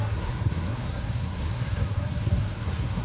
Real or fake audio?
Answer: fake